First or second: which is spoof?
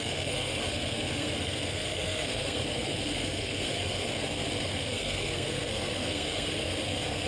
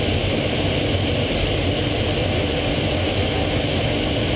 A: first